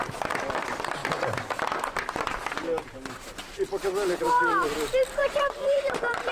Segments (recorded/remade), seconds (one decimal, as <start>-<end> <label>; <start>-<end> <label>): 0.0-0.5 recorded; 0.5-1.0 remade; 1.0-3.3 recorded; 3.3-6.3 remade